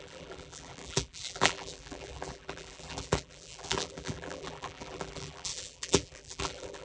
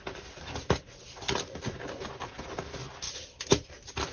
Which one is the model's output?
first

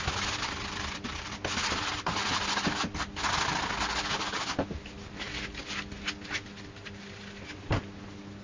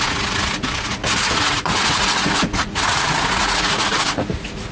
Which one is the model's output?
second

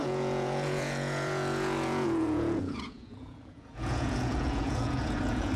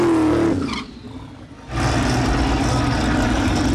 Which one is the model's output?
first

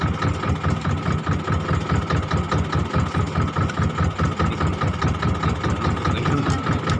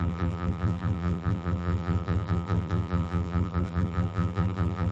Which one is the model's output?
second